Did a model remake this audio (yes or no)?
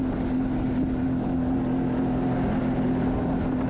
no